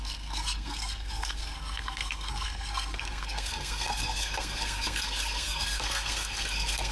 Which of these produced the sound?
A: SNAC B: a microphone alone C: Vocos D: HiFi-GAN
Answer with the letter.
A